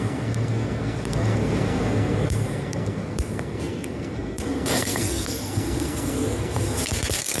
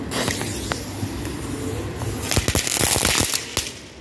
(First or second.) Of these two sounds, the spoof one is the first